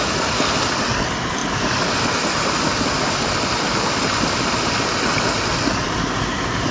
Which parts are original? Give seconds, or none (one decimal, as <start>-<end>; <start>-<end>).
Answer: 0.0-6.7

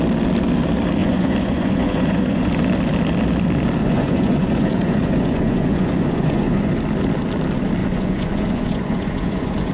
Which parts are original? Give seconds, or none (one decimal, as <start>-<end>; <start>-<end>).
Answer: 0.0-1.0; 2.5-3.8; 6.7-7.8

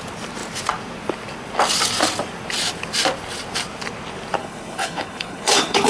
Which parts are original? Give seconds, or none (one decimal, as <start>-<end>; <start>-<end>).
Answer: 0.0-4.4

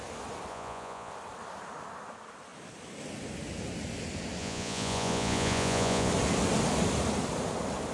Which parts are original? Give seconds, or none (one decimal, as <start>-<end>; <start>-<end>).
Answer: 0.0-0.5; 1.1-4.4; 6.1-7.9

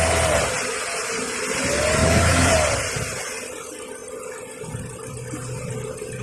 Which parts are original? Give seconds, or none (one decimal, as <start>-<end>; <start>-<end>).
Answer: 0.0-2.0; 2.5-6.2